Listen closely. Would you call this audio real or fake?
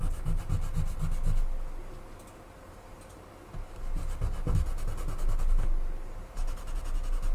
real